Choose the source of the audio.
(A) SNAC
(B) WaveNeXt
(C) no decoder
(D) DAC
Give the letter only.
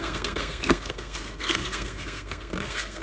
A